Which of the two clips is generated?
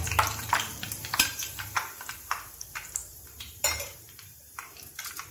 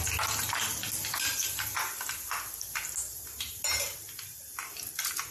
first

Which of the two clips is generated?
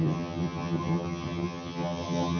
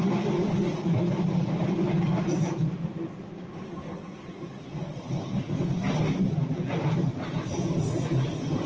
first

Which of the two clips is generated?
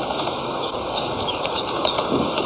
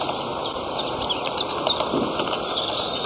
first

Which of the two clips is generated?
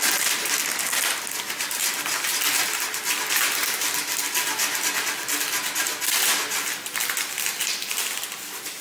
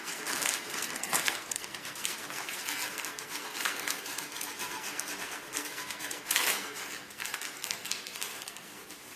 second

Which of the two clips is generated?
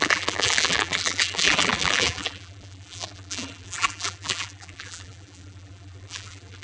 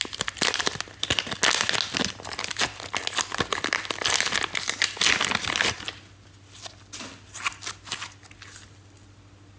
first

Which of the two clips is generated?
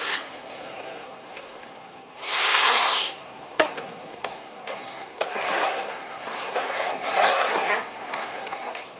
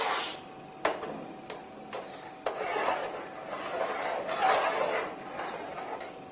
first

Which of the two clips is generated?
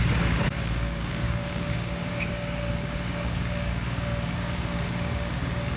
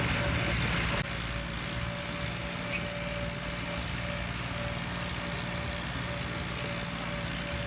first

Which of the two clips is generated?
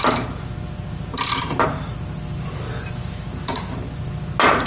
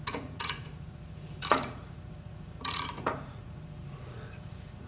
second